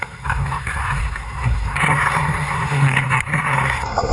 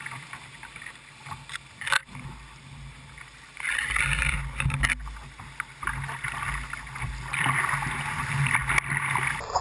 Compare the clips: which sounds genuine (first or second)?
second